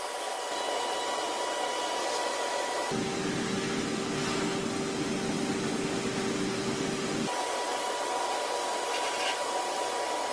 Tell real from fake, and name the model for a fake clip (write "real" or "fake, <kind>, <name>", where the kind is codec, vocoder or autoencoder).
fake, vocoder, BigVGAN v2